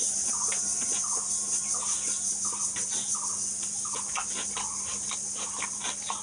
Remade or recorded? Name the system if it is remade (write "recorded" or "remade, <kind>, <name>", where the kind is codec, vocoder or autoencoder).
recorded